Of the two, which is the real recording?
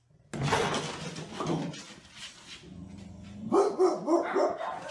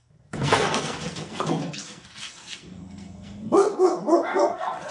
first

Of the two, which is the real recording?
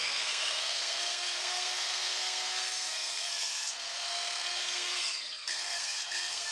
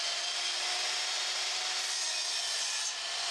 second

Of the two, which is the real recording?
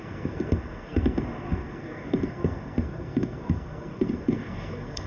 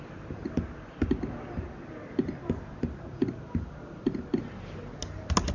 second